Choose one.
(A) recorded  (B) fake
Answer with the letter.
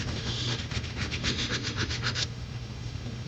B